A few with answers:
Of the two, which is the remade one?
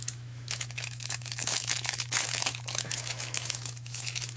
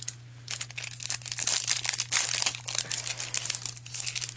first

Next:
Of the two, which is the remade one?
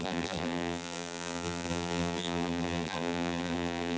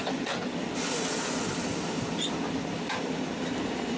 first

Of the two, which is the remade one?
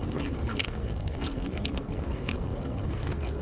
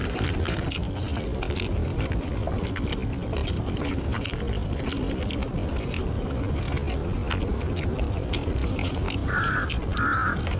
first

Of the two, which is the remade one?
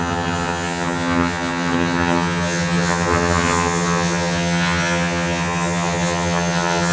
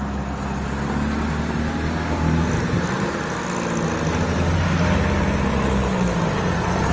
first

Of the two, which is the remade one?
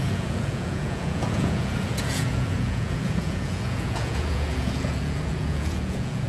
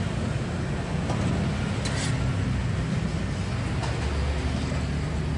first